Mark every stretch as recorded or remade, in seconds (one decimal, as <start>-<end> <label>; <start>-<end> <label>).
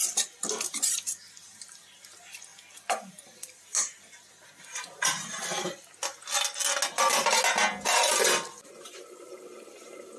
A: 0.0-10.2 recorded